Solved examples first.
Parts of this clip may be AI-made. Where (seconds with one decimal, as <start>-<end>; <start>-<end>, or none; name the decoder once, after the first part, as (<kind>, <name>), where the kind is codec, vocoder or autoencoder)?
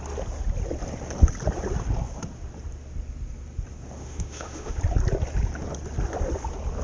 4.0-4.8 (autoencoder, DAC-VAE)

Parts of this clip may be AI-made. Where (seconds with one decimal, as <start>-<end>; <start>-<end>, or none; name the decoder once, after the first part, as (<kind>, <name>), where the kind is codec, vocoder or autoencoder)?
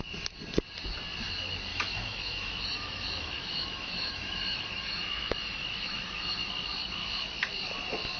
1.7-6.5 (autoencoder, DAC-VAE)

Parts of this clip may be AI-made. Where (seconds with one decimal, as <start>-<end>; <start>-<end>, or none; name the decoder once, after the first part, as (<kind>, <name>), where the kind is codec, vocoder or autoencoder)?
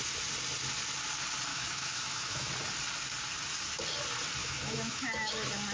1.5-2.5 (autoencoder, DAC-VAE); 4.4-5.3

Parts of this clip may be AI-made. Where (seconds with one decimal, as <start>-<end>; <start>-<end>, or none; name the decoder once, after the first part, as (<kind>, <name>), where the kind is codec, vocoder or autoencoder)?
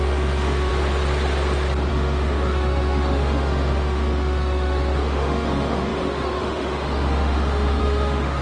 0.0-0.7 (autoencoder, DAC-VAE); 1.9-8.4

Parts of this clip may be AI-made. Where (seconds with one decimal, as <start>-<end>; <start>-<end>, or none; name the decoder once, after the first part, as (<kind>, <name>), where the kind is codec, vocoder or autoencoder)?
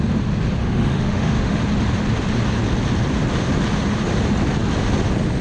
0.6-1.6 (autoencoder, DAC-VAE)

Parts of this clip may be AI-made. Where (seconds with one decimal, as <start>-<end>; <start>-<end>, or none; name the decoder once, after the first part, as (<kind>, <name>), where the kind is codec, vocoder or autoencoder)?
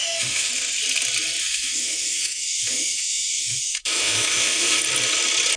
0.0-0.5 (autoencoder, DAC-VAE); 1.4-4.8